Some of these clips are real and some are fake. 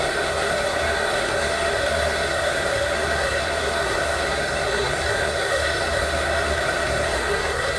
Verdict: fake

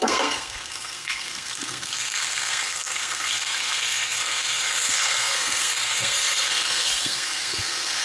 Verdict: fake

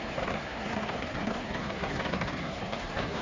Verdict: fake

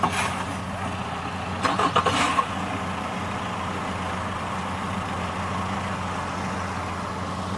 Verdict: real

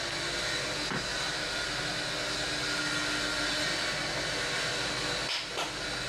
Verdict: real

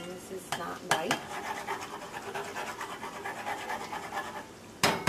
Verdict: real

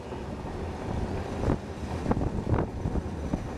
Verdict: real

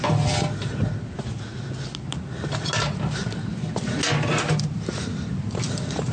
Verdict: real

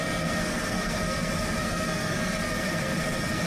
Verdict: fake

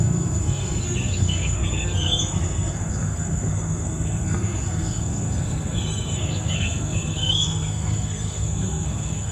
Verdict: fake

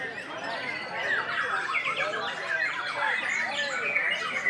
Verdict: real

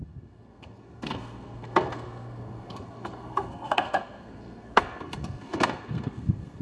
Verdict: fake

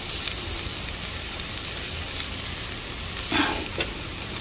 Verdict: real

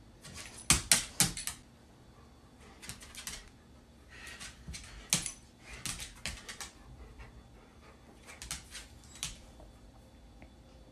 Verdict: real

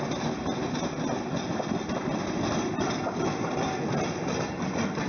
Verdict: real